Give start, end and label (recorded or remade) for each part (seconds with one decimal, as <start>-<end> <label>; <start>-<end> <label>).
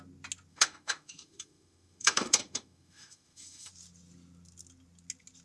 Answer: 0.0-0.5 recorded; 0.5-3.7 remade; 3.7-5.4 recorded